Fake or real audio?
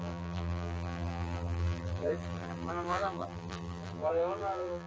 fake